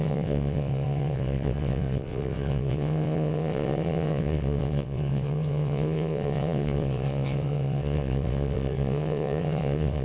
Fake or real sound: fake